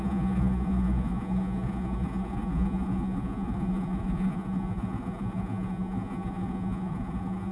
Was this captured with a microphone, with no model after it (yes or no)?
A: no